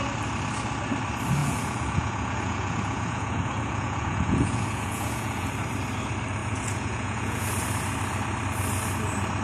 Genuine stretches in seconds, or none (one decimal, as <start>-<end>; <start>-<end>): 0.0-1.4; 5.5-6.4; 7.5-9.4